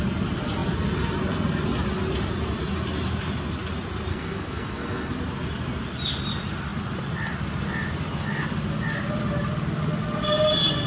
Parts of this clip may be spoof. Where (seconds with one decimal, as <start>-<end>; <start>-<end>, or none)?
4.1-5.1